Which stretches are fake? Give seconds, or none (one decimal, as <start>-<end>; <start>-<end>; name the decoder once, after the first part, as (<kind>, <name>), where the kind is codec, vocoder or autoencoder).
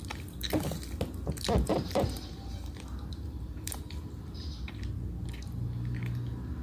1.7-3.8 (vocoder, BigVGAN v2)